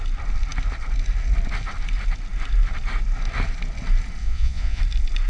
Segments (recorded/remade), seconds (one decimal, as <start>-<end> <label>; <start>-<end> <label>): 0.0-4.2 recorded; 4.2-4.8 remade; 4.8-5.3 recorded